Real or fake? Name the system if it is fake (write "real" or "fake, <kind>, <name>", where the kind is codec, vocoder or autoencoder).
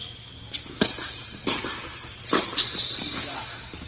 fake, vocoder, BigVGAN v2